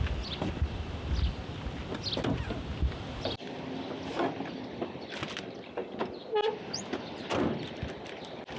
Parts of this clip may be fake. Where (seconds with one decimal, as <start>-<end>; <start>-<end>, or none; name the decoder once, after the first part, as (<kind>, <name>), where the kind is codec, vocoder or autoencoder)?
none